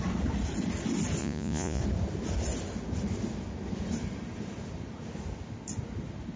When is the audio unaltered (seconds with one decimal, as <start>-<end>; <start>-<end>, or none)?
0.0-1.2; 1.8-6.4